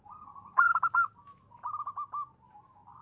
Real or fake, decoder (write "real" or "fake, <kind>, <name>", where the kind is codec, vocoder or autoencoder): real